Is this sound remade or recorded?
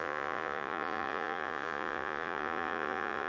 remade